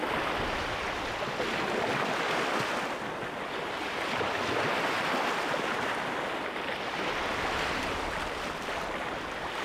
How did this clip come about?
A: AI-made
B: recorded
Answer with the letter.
B